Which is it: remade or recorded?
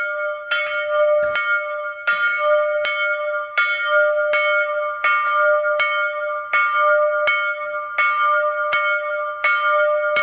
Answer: recorded